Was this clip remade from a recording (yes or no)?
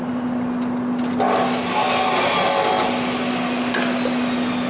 no